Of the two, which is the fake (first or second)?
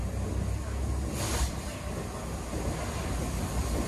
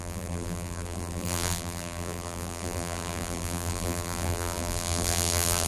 second